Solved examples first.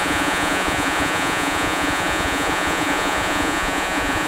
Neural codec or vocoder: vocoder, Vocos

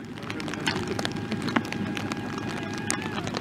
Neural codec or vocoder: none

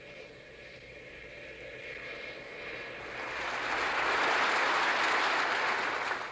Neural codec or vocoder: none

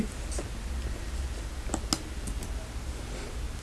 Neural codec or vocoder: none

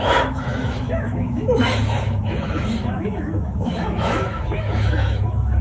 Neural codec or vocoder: autoencoder, DAC-VAE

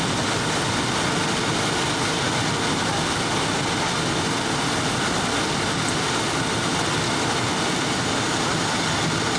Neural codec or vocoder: none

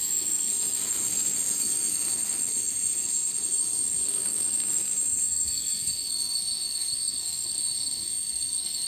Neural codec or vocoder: codec, SNAC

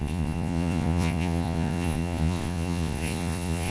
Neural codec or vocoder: vocoder, Vocos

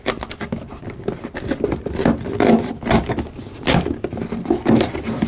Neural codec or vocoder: none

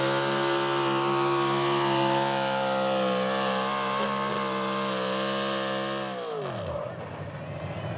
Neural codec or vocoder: none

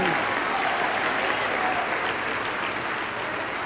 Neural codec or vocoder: none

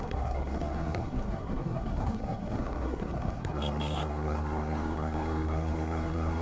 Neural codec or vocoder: codec, SNAC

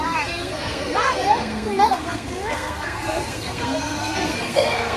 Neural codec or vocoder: codec, SNAC